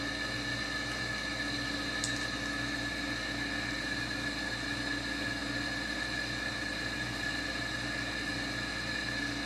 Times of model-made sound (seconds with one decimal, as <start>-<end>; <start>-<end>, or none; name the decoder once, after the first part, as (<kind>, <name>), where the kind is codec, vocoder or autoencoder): 5.4-7.3 (vocoder, BigVGAN v2)